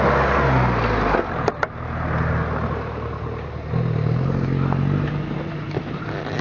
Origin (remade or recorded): recorded